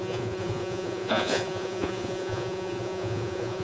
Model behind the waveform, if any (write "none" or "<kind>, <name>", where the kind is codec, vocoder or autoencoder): vocoder, Vocos